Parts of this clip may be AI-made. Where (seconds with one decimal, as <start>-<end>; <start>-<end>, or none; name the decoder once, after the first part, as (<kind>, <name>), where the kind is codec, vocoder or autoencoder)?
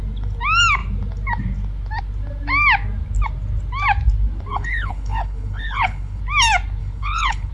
4.5-6.2 (codec, HILCodec); 6.8-7.5